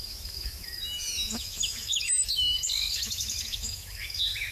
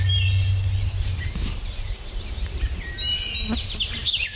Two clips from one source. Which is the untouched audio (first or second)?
second